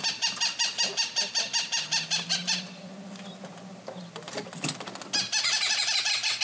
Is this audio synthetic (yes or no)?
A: no